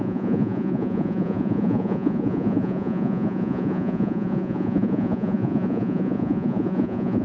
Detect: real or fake fake